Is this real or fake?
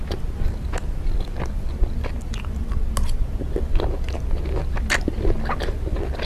real